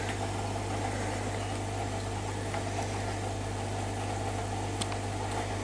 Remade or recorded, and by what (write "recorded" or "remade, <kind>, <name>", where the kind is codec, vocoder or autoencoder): recorded